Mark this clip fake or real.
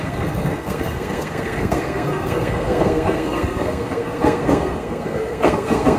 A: fake